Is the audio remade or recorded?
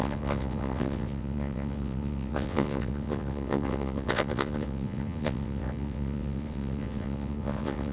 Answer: remade